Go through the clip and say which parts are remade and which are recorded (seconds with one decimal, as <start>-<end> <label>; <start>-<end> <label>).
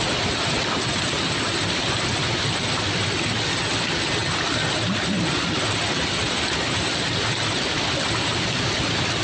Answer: 0.0-9.2 recorded